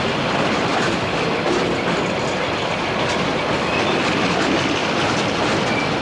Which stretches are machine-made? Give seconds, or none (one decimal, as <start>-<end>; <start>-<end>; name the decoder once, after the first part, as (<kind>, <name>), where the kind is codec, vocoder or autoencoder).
4.8-5.6 (vocoder, BigVGAN v2)